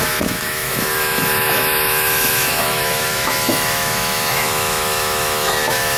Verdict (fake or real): fake